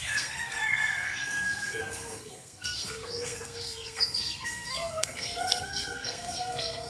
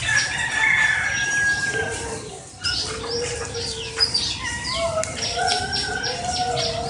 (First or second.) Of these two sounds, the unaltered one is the second